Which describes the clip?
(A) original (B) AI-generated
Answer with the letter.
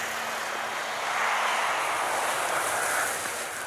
A